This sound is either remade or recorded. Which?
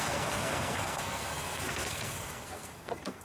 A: remade